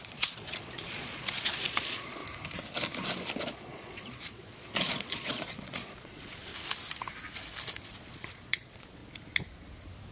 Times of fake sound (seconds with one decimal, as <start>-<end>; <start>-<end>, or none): 0.0-2.2; 3.4-6.5; 7.9-9.0